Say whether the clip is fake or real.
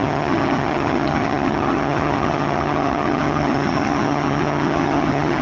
fake